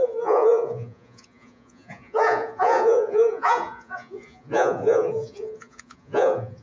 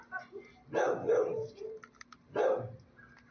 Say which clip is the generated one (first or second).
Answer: first